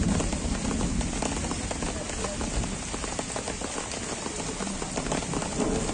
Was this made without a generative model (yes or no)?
yes